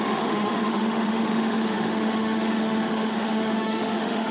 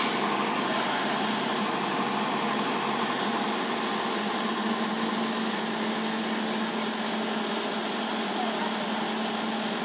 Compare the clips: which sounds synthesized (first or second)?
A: first